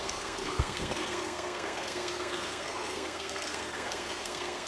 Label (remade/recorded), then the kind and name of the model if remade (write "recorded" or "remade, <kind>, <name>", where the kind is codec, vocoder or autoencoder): remade, codec, SNAC